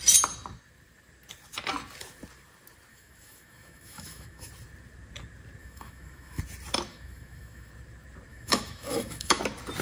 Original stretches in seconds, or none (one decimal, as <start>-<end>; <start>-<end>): 0.0-2.9; 4.5-5.6; 6.4-6.9; 7.7-8.3; 9.4-9.8